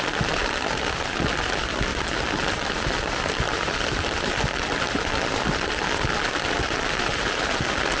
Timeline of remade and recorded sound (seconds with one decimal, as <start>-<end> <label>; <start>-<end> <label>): 0.0-8.0 recorded